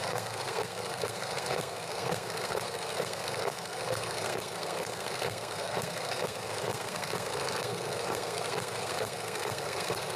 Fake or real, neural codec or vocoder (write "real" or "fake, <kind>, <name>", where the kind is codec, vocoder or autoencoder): fake, codec, SNAC